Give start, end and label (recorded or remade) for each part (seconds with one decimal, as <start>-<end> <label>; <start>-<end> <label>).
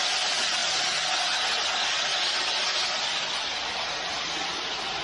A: 0.0-5.0 recorded